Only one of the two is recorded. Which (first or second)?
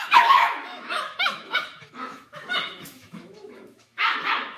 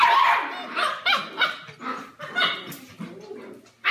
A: second